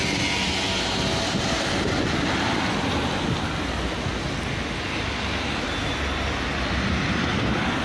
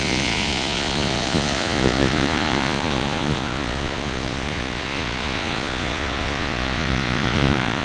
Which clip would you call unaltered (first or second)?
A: first